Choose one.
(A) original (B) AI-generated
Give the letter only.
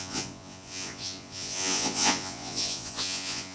B